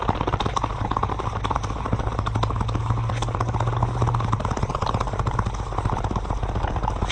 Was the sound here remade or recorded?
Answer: recorded